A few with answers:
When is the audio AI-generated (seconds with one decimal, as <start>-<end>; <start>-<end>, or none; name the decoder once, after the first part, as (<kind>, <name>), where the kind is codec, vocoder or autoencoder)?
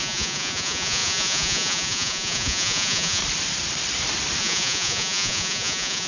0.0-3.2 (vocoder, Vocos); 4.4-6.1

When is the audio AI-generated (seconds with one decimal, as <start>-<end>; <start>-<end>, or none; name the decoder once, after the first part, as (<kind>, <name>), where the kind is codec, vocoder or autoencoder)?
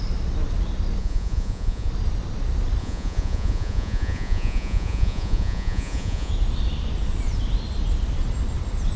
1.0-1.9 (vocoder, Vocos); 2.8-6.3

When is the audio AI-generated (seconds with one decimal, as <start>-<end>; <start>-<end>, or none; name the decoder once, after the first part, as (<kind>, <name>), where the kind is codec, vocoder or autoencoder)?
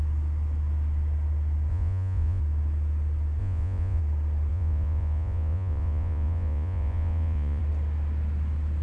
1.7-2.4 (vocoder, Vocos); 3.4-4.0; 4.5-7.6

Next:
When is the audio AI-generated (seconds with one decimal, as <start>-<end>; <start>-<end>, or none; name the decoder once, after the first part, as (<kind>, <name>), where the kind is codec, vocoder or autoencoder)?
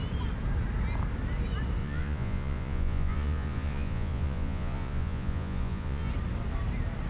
1.8-6.1 (vocoder, Vocos)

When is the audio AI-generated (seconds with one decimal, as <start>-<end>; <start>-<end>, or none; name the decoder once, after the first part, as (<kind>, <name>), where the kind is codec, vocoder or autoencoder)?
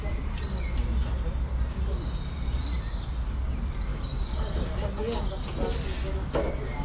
none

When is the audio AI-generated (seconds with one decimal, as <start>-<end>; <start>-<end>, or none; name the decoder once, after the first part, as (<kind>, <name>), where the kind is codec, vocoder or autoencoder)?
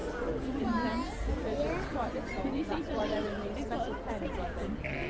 1.9-3.4 (vocoder, Vocos)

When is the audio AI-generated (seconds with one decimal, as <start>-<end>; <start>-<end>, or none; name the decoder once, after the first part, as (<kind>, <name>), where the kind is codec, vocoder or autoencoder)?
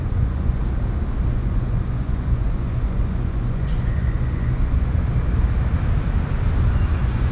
0.0-0.6 (vocoder, Vocos); 1.3-5.1; 6.7-7.3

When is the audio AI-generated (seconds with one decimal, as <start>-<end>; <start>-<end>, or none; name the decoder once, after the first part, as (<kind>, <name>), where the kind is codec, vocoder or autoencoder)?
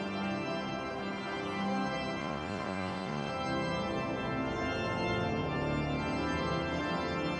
2.2-3.3 (vocoder, Vocos)